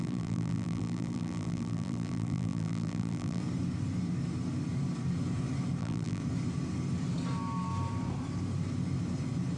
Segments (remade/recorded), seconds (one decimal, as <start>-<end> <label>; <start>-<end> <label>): 0.0-3.4 remade; 3.4-5.8 recorded; 5.8-6.2 remade; 6.2-9.6 recorded